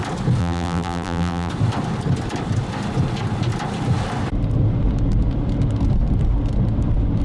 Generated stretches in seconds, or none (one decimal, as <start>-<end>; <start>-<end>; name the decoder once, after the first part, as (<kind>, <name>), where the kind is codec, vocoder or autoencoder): 0.4-1.5 (vocoder, BigVGAN v2)